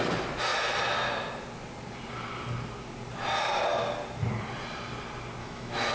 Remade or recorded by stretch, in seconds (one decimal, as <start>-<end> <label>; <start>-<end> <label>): 0.0-5.4 recorded; 5.4-5.9 remade